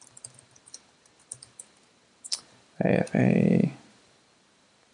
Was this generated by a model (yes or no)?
yes